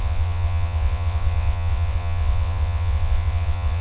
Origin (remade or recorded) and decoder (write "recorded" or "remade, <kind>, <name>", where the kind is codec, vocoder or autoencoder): remade, vocoder, WaveNeXt